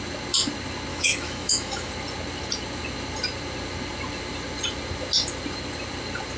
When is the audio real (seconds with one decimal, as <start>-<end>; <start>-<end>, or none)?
0.0-0.9; 1.9-6.4